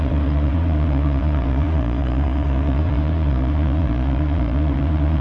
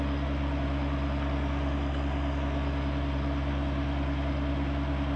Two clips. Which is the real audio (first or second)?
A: second